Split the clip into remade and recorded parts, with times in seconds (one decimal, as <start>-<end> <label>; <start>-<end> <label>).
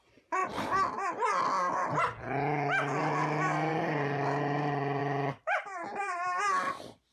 0.0-3.0 recorded; 3.0-3.7 remade; 3.7-5.0 recorded; 5.0-6.4 remade; 6.4-7.1 recorded